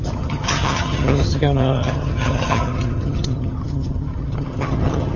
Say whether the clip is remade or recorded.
remade